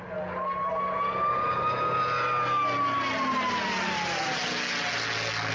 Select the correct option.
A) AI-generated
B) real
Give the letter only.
B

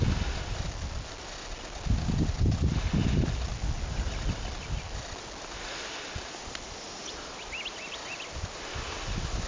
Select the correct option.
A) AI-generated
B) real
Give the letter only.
B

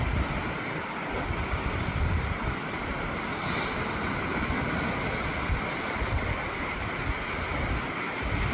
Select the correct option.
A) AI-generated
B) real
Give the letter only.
A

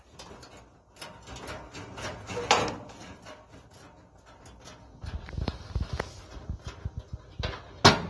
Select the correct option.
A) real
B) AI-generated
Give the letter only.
A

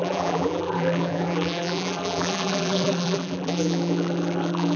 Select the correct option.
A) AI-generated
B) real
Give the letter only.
A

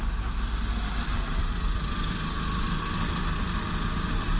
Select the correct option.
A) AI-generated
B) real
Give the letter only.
B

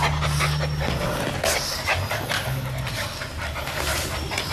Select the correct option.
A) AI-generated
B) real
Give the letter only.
B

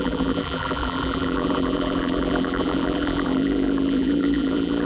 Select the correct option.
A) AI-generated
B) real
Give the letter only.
A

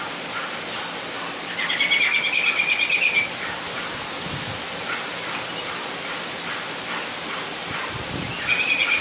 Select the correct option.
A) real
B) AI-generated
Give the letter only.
A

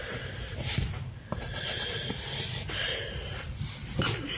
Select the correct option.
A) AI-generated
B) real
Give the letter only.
B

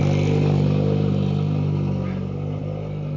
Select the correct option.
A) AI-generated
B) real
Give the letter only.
B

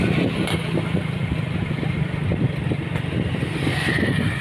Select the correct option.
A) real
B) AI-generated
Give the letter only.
A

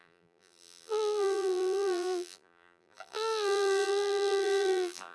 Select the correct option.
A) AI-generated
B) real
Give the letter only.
A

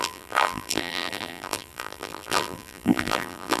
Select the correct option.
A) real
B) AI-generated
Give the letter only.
B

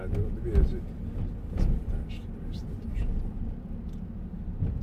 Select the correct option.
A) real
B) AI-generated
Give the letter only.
A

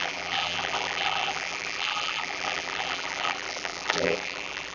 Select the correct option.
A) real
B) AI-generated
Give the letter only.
B